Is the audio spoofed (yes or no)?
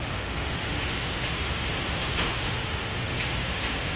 yes